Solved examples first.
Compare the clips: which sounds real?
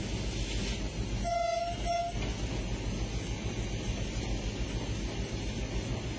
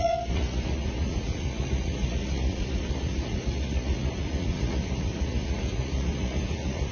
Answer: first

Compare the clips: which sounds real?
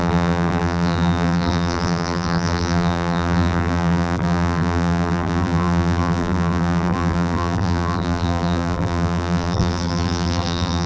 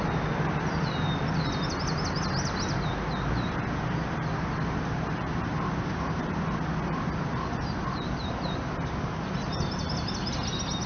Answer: second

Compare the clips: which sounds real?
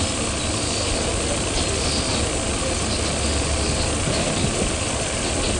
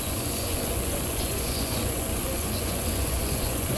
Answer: first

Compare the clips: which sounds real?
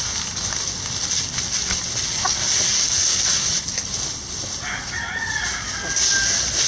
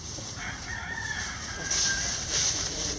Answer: first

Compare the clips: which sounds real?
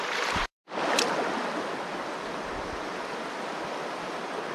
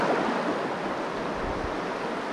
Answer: second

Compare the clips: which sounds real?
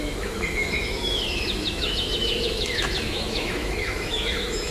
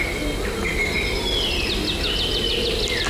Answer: second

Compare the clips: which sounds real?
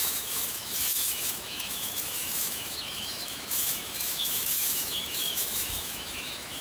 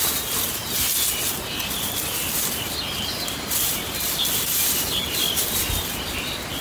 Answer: second